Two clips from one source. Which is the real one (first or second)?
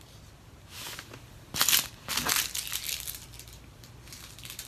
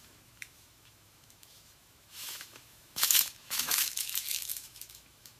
first